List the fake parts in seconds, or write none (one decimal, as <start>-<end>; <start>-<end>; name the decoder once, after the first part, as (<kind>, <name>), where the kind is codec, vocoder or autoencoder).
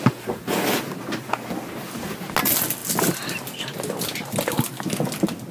none